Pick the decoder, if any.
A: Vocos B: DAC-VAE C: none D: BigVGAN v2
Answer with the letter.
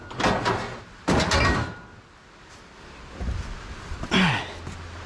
C